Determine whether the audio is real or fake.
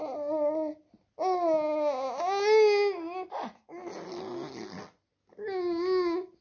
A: real